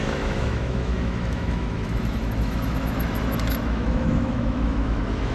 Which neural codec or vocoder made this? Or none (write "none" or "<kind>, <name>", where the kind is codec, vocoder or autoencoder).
autoencoder, DAC-VAE